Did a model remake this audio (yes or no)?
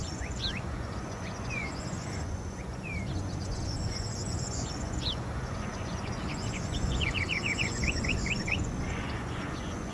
yes